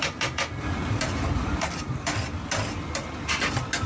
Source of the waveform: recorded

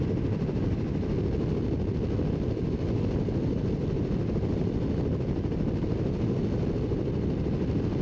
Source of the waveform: recorded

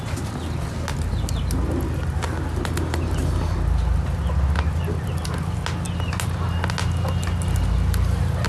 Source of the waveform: recorded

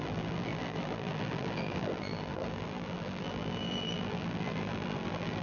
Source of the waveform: remade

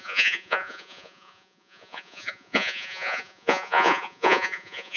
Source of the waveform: remade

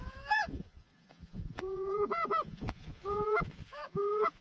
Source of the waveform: remade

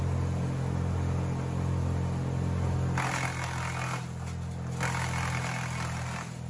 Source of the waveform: recorded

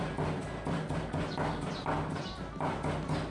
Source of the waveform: recorded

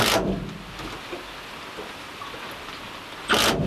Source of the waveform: recorded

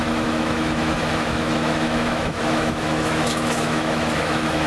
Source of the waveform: remade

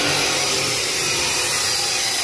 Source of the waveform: recorded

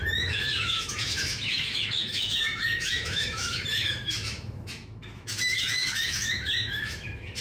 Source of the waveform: remade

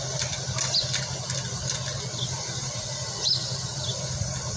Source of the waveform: recorded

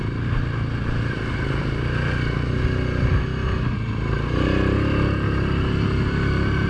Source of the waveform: recorded